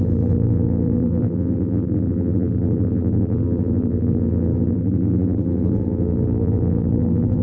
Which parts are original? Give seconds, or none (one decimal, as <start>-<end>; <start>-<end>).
none

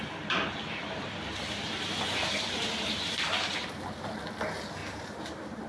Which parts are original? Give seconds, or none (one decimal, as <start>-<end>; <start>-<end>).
0.0-0.8; 4.2-4.8

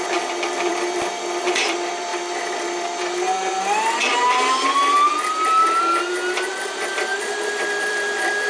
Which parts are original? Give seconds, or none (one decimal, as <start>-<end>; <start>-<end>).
0.0-7.1

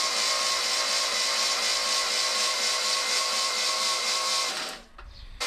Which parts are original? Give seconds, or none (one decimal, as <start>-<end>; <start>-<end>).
0.0-2.3; 4.1-5.5

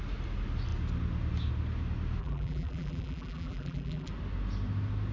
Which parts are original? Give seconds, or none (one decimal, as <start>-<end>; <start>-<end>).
0.0-2.2; 4.1-5.1